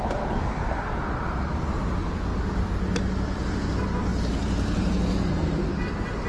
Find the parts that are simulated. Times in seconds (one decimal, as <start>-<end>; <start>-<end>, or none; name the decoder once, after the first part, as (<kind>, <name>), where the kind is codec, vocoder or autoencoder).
none